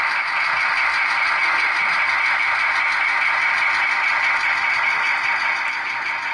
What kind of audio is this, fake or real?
real